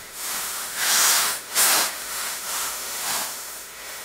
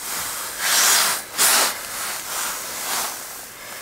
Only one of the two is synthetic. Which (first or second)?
first